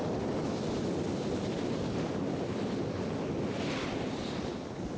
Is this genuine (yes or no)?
yes